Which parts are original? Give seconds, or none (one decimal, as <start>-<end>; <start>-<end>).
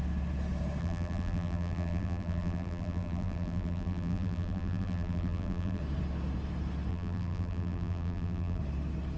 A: 0.0-0.8; 5.8-6.9; 8.6-9.2